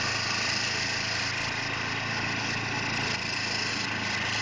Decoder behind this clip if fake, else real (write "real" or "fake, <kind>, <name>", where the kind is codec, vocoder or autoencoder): real